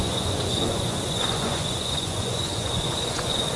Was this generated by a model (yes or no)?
yes